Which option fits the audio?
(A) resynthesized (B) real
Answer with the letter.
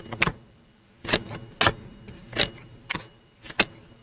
B